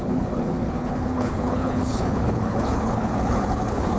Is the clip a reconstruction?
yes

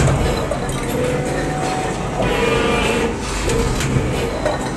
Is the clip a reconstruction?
no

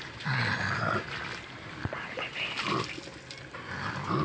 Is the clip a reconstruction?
no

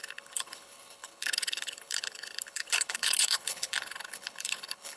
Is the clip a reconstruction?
yes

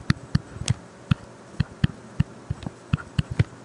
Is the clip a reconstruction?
no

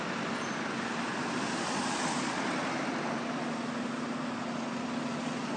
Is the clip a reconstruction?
no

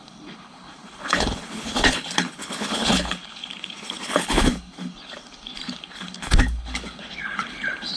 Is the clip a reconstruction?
yes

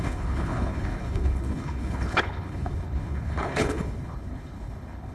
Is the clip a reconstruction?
yes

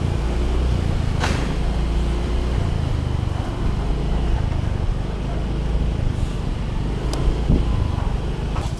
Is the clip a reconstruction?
no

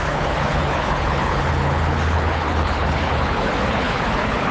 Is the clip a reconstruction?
yes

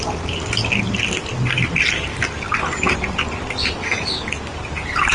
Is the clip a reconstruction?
no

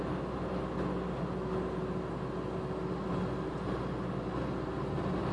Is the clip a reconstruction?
no